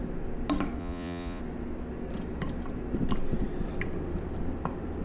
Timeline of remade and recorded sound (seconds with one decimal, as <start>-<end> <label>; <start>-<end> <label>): 0.0-0.8 recorded; 0.8-1.4 remade; 1.4-5.0 recorded

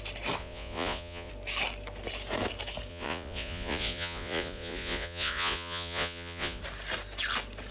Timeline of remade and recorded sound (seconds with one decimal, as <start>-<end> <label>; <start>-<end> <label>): 0.0-0.4 recorded; 0.4-1.3 remade; 1.3-2.9 recorded; 2.9-6.6 remade; 6.6-7.7 recorded